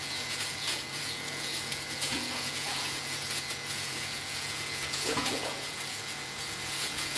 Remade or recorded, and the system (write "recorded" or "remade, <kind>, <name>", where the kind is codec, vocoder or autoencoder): remade, vocoder, Vocos